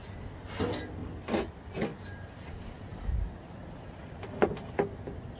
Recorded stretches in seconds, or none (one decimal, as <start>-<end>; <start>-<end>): 0.0-5.4